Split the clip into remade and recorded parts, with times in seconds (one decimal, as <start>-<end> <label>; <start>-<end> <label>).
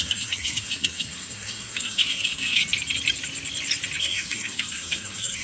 0.0-2.6 remade; 2.6-4.0 recorded; 4.0-5.4 remade